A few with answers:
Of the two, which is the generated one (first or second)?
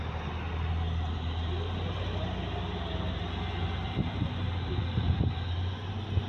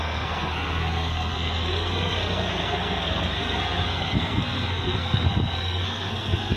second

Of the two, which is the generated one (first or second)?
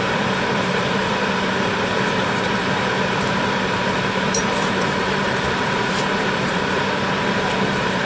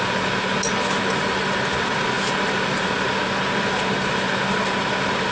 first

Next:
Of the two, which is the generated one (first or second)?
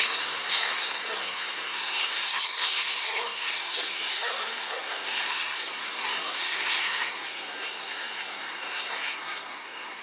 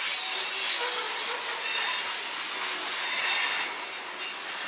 first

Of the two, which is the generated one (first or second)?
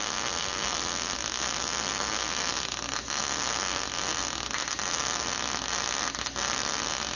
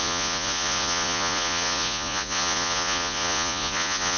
second